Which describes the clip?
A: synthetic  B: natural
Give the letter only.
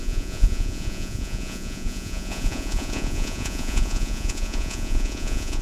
A